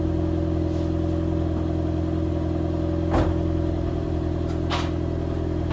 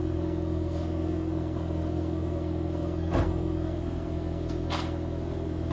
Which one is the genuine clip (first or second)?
first